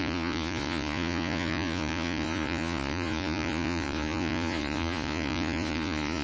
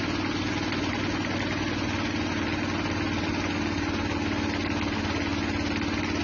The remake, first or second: first